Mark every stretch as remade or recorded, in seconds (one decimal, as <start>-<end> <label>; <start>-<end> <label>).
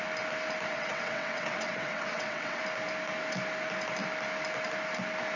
0.0-0.7 recorded; 0.7-2.6 remade; 2.6-5.4 recorded